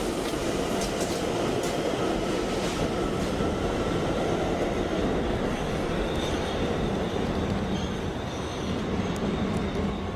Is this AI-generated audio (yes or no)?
no